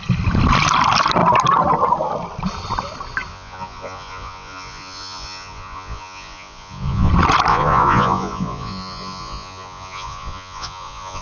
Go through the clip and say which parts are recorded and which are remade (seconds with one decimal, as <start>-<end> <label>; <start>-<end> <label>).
0.0-3.3 recorded; 3.3-7.1 remade; 7.1-7.5 recorded; 7.5-11.2 remade